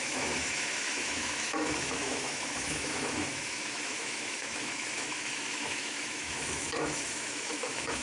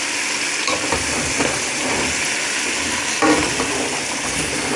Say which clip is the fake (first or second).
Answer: first